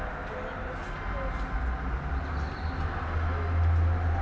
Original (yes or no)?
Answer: yes